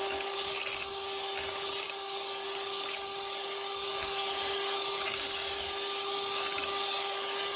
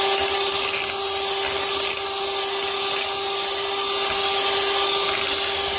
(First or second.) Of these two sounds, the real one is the second